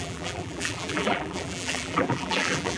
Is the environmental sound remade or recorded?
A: remade